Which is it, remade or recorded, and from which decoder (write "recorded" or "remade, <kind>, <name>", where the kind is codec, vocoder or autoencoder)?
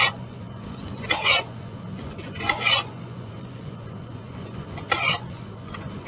remade, vocoder, Vocos